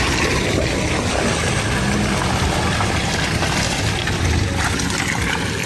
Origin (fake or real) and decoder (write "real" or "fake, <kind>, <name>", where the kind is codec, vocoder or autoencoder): real